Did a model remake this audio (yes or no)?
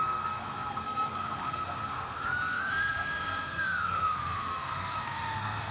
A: yes